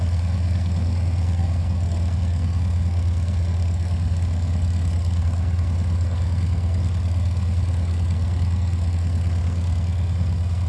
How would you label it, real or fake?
fake